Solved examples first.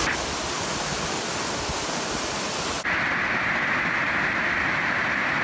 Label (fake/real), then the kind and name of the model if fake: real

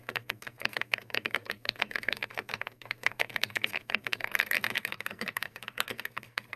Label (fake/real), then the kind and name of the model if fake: fake, codec, SNAC